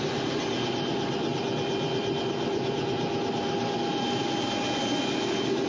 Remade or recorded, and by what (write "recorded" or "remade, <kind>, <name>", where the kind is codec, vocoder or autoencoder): recorded